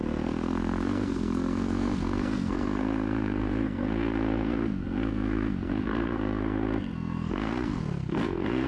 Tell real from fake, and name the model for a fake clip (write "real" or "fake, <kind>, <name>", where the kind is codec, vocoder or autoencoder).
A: fake, codec, SNAC